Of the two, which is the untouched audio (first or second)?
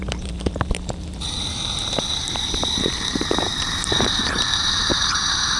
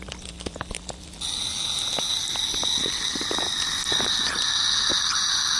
second